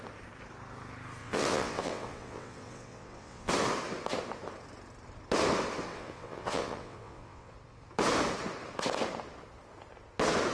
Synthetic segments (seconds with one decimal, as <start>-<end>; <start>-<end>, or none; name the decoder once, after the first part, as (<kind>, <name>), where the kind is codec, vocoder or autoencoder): 1.2-3.5 (vocoder, WaveNeXt); 5.9-7.5